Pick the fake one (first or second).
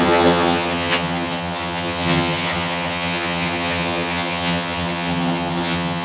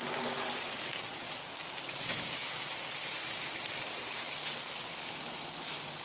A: first